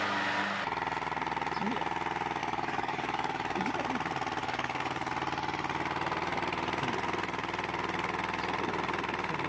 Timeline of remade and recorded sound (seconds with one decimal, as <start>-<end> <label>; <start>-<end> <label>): 0.0-2.4 recorded; 2.4-3.7 remade; 3.7-4.4 recorded; 4.4-5.1 remade; 5.1-9.5 recorded